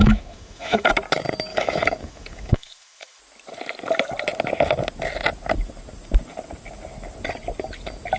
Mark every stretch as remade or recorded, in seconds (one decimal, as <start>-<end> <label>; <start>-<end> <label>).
0.0-0.9 remade; 0.9-1.5 recorded; 1.5-3.2 remade; 3.2-8.2 recorded